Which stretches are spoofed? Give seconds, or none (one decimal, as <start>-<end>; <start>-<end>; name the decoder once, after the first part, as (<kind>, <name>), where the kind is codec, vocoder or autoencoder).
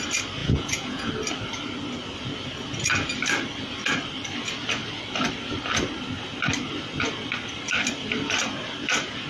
0.4-1.1 (vocoder, Vocos)